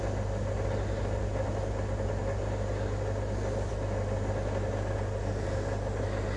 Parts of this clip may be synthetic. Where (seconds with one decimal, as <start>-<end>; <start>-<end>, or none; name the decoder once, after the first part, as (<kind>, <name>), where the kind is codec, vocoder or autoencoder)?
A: none

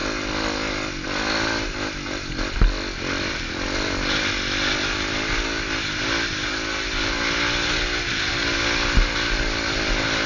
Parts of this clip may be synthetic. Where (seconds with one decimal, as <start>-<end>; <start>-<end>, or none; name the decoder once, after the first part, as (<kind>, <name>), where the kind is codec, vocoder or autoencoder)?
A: none

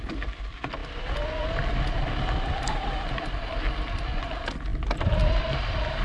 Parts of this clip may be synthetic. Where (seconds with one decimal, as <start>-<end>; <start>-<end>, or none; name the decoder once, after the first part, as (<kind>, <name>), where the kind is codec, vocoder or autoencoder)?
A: none

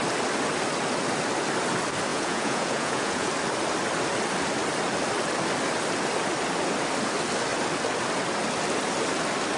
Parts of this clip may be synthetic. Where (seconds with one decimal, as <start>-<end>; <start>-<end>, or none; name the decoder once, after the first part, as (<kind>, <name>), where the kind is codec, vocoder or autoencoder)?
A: 2.1-3.3 (vocoder, Vocos)

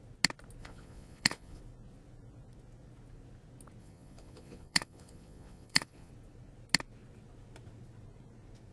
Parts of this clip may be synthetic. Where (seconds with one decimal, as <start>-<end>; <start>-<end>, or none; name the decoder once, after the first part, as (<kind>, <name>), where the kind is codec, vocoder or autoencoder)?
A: 0.6-1.6 (vocoder, Vocos); 3.8-6.1